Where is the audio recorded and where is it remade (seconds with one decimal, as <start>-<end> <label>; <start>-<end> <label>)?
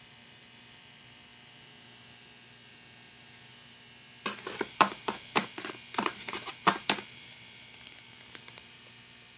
0.0-1.3 remade; 1.3-4.7 recorded; 4.7-9.4 remade